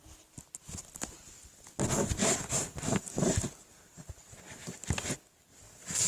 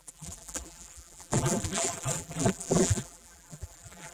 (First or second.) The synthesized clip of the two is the second